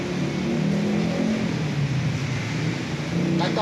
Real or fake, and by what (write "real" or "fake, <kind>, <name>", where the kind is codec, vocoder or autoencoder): real